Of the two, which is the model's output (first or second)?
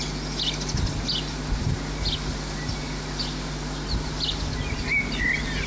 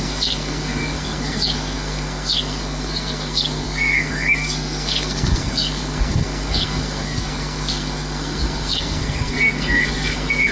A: second